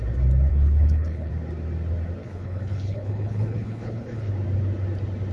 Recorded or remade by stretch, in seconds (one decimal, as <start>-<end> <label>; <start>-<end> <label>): 0.0-0.5 recorded; 0.5-1.3 remade; 1.3-2.2 recorded; 2.2-4.3 remade; 4.3-5.3 recorded